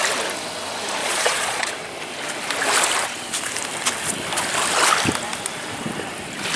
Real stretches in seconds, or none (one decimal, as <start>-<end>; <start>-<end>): 0.0-1.0; 1.7-6.6